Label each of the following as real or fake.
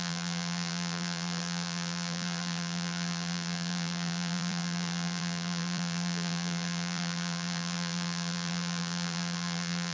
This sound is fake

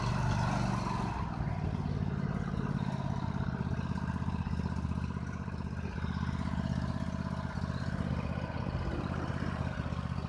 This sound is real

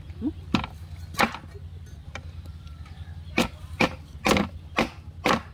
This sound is real